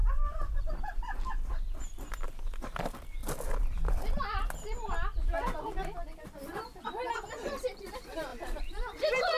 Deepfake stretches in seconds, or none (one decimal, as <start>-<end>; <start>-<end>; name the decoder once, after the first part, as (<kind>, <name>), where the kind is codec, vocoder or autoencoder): 0.0-3.2 (vocoder, BigVGAN v2); 7.1-9.4